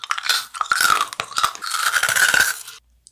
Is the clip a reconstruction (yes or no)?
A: no